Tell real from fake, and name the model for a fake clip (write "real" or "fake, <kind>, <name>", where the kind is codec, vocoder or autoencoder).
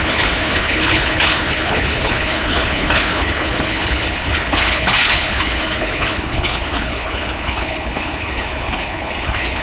fake, codec, HILCodec